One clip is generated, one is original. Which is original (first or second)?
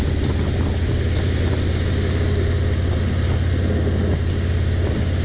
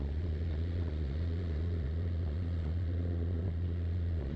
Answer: first